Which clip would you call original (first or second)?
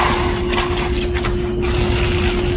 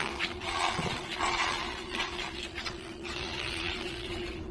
first